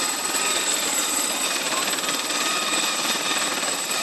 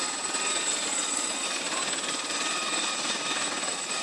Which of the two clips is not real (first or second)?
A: first